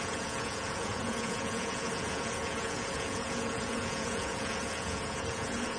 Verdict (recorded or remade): remade